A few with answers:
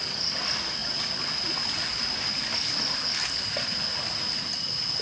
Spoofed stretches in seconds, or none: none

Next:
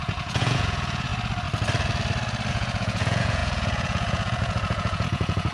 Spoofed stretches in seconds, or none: 0.0-1.1 (vocoder, Vocos); 2.5-5.5

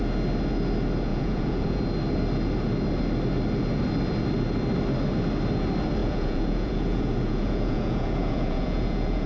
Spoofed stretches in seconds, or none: 1.1-1.8 (vocoder, Vocos); 6.0-9.3